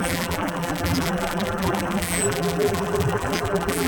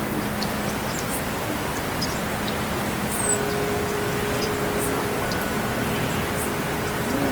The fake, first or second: first